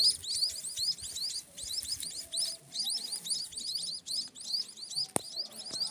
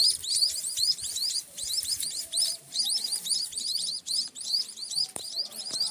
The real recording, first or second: first